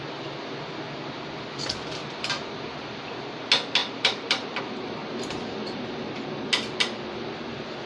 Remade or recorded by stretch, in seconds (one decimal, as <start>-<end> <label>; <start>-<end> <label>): 0.0-2.0 recorded; 2.0-3.0 remade; 3.0-3.8 recorded; 3.8-4.6 remade; 4.6-5.0 recorded; 5.0-6.1 remade; 6.1-7.9 recorded